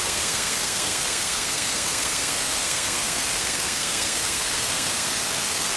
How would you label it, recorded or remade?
remade